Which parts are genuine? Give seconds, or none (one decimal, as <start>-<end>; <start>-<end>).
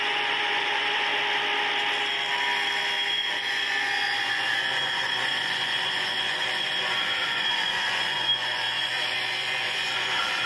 1.1-3.1